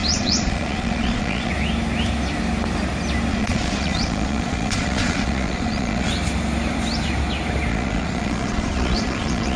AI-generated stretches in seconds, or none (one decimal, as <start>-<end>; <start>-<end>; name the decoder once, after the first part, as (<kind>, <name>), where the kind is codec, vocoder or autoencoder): 0.0-1.5 (vocoder, Vocos); 3.3-6.1; 7.7-9.6